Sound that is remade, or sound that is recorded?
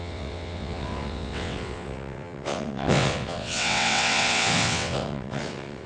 remade